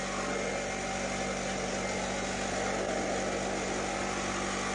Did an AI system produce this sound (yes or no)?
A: no